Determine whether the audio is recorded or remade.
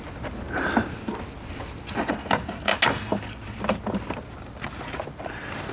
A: recorded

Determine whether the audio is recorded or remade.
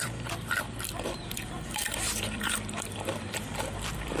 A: remade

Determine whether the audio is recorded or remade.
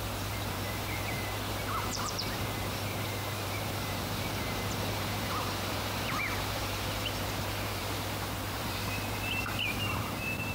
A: remade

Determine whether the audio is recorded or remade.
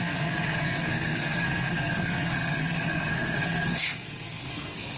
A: remade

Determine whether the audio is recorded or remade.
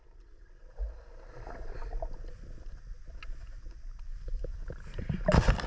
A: recorded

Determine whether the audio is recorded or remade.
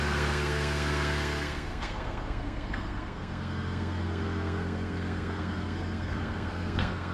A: remade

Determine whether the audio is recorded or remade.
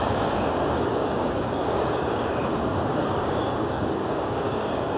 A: remade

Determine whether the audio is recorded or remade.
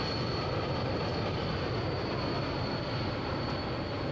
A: recorded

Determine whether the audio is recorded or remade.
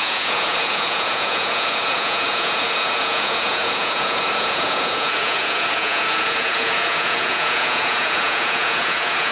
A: remade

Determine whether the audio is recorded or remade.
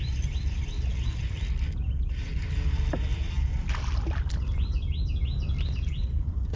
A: recorded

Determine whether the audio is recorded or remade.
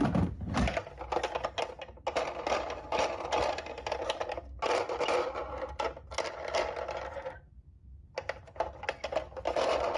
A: recorded